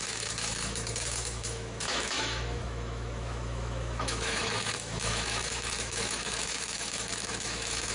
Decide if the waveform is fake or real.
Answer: fake